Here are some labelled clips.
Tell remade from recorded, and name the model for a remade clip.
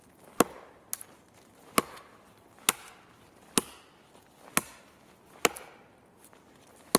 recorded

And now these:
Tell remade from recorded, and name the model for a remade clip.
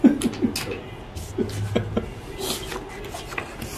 recorded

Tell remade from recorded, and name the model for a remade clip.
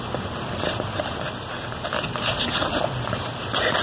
recorded